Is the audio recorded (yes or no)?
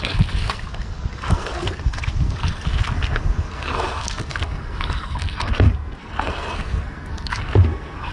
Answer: no